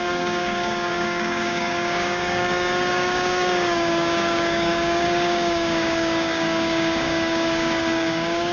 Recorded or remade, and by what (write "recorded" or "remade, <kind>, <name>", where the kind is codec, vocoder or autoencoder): remade, codec, DAC